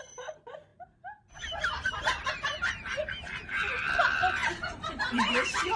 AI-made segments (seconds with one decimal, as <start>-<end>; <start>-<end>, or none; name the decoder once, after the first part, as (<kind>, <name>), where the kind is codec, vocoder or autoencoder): 0.0-5.8 (vocoder, BigVGAN v2)